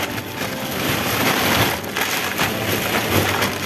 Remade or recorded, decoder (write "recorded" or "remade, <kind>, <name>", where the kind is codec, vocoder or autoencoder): recorded